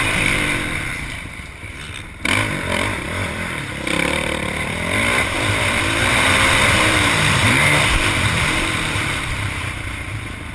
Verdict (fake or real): fake